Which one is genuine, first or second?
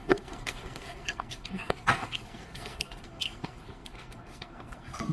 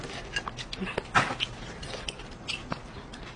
second